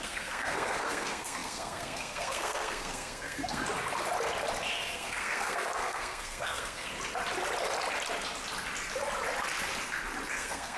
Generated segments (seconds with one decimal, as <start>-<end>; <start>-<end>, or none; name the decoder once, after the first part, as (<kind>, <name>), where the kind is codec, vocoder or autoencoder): 0.0-3.6 (codec, SNAC); 4.7-6.9; 10.3-10.8